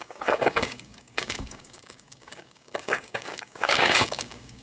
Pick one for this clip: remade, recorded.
remade